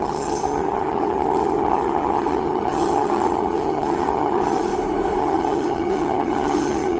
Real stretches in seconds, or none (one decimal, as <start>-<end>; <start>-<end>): 4.7-5.2